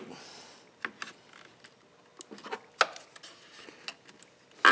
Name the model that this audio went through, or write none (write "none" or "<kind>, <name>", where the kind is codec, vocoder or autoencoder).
none